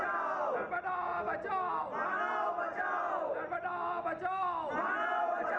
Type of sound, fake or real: real